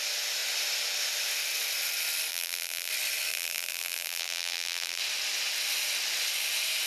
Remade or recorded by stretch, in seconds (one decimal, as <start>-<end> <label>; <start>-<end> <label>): 0.0-2.3 recorded; 2.3-2.9 remade; 2.9-3.3 recorded; 3.3-5.0 remade; 5.0-6.9 recorded